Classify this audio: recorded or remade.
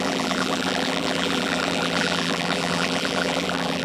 remade